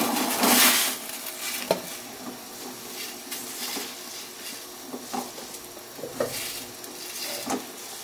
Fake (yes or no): no